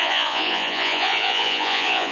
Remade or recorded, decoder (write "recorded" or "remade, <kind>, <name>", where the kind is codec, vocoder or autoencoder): remade, vocoder, Vocos